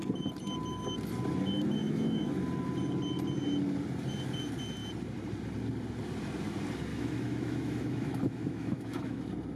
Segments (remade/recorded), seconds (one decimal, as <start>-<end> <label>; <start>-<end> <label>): 0.0-1.8 recorded; 1.8-2.4 remade; 2.4-6.9 recorded; 6.9-9.2 remade; 9.2-9.6 recorded